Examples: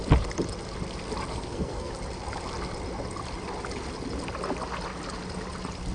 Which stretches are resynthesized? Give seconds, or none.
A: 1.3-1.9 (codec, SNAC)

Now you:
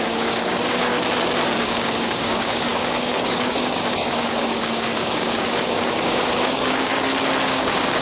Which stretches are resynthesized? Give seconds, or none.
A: 0.0-0.9 (codec, DAC); 1.6-6.9; 7.4-8.0

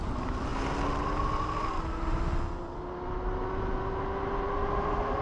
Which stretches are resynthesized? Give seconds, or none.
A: none

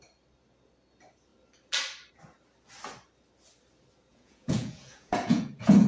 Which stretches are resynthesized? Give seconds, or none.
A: 4.1-5.9 (vocoder, Vocos)

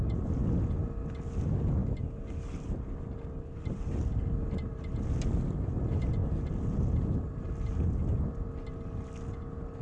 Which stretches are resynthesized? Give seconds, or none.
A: 1.8-2.3 (vocoder, BigVGAN v2); 6.2-7.7